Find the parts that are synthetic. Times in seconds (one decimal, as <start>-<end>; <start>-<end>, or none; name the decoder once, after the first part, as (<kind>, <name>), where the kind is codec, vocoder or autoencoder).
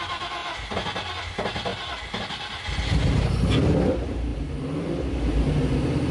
none